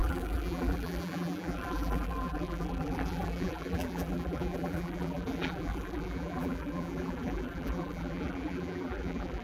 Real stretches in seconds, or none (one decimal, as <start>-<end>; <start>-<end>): none

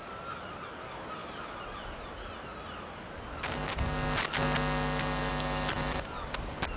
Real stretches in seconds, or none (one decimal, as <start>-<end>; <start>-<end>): 0.0-6.8

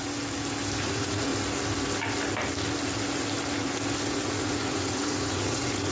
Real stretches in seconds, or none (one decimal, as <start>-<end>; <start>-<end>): 0.0-0.8; 1.3-4.1

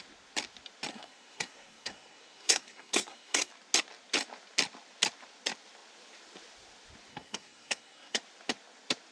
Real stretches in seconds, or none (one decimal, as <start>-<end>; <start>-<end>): 0.0-0.9; 3.5-7.1; 8.2-9.1

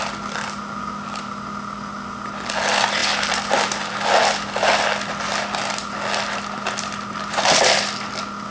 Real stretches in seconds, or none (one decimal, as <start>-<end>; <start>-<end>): 0.0-8.5

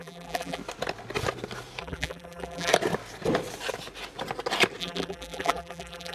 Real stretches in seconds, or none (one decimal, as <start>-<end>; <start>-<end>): 0.6-1.8; 2.7-4.8